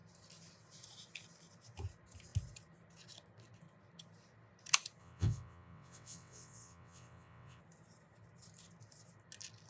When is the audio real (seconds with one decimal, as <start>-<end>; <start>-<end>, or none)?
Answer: 0.0-5.0; 7.6-9.7